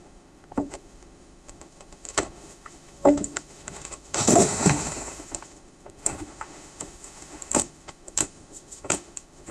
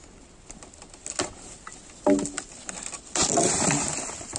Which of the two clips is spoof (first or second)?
first